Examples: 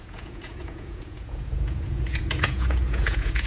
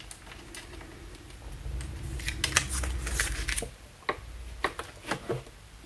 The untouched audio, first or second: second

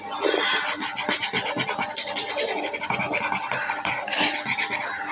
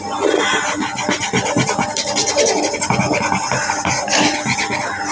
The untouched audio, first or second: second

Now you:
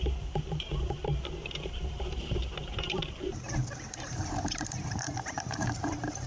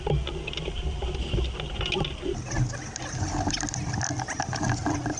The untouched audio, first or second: second